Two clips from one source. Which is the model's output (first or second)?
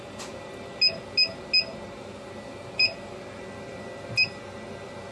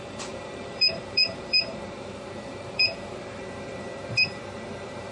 second